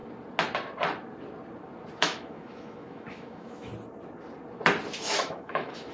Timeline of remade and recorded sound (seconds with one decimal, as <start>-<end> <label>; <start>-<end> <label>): 0.0-2.0 recorded; 2.0-3.7 remade; 3.7-5.0 recorded; 5.0-5.9 remade